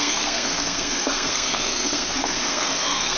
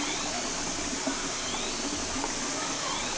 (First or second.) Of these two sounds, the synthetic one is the first